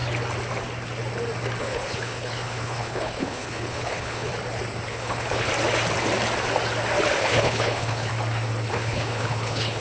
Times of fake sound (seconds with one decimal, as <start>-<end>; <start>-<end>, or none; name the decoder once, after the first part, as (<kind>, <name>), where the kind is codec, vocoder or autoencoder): 1.6-4.3 (codec, HILCodec); 4.9-5.5; 7.2-8.1; 8.7-9.8